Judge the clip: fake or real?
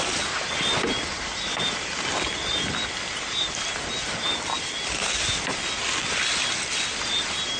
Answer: real